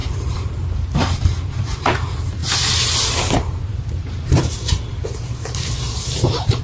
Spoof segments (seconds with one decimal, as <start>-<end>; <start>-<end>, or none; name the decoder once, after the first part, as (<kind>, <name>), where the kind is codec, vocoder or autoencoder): 0.0-2.4 (vocoder, BigVGAN v2); 3.1-6.6